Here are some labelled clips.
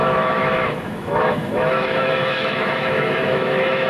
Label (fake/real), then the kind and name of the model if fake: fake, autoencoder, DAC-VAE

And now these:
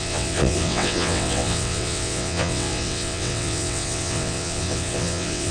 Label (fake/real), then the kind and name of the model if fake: fake, vocoder, WaveNeXt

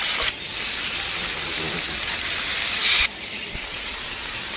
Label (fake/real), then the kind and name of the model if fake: real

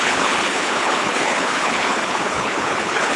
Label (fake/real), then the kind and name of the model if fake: fake, codec, HILCodec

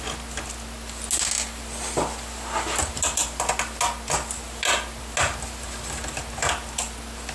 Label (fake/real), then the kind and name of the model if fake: real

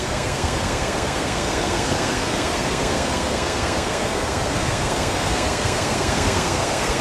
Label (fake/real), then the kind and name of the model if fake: fake, codec, SNAC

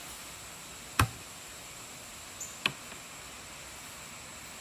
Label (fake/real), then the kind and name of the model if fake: real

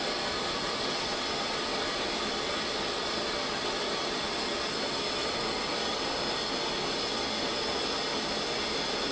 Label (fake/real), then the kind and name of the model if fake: real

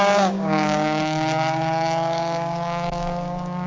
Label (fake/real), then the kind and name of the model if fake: fake, codec, DAC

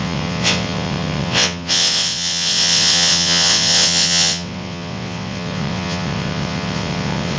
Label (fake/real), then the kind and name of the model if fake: fake, vocoder, WaveNeXt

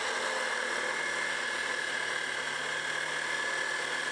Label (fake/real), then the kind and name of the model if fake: real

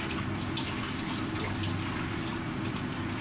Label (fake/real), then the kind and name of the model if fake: real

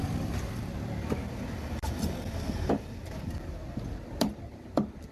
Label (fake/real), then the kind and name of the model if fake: fake, vocoder, BigVGAN v2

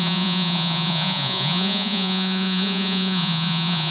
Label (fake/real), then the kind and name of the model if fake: fake, vocoder, Vocos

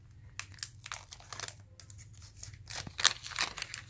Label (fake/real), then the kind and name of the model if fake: real